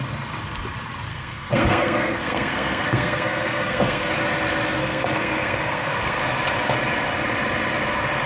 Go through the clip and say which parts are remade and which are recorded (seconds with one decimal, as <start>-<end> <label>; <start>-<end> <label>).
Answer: 0.0-1.1 recorded; 1.1-4.1 remade; 4.1-4.8 recorded; 4.8-6.2 remade; 6.2-8.3 recorded